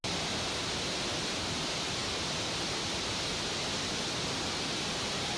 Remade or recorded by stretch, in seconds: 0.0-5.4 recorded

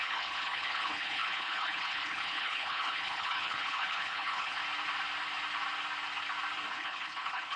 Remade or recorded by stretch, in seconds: 0.0-4.6 remade; 4.6-6.7 recorded; 6.7-7.6 remade

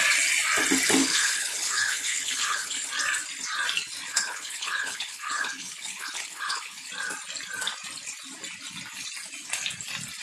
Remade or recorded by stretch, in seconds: 0.0-1.0 recorded; 1.0-2.9 remade; 2.9-4.1 recorded; 4.1-6.9 remade; 6.9-10.2 recorded

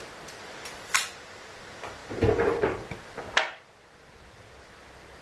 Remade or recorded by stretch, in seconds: 0.0-5.2 recorded

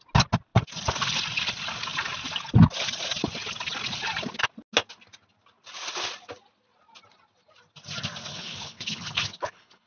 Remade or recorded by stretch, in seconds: 0.0-8.3 recorded; 8.3-9.9 remade

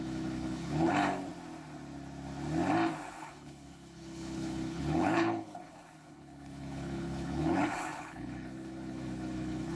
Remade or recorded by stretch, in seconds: 0.0-0.9 remade; 0.9-3.1 recorded; 3.1-9.8 remade